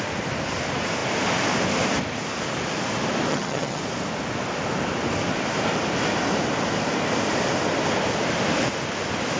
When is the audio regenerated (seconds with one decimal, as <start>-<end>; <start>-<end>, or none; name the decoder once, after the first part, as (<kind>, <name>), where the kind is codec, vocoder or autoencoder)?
3.3-3.8 (vocoder, HiFi-GAN)